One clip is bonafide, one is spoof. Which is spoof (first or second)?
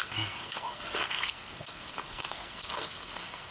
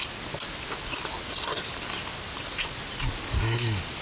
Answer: first